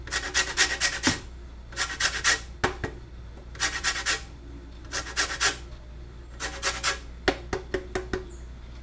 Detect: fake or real real